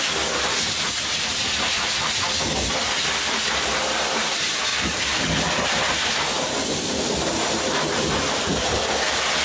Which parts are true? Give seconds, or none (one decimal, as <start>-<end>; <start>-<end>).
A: 0.0-4.7; 8.9-9.4